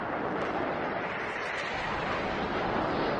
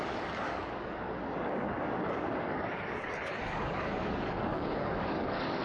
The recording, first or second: first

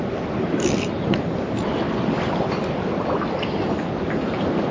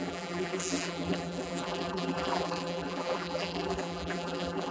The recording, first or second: first